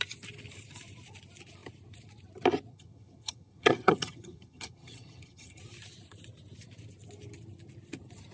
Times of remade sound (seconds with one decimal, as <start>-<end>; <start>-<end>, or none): 2.7-5.6